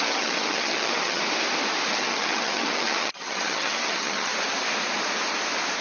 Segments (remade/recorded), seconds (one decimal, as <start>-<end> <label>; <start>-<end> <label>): 0.0-1.2 remade; 1.2-1.9 recorded; 1.9-4.3 remade; 4.3-5.8 recorded